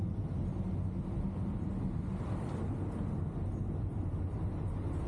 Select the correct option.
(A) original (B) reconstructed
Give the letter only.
A